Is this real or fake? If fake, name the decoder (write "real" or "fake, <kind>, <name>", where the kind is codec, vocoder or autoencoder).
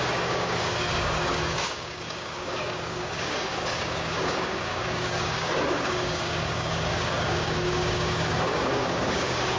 fake, codec, DAC